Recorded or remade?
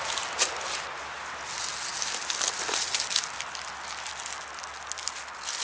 recorded